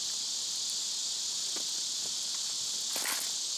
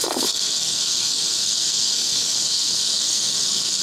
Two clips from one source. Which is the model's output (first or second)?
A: second